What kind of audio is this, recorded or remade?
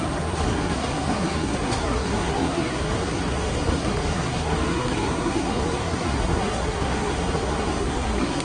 remade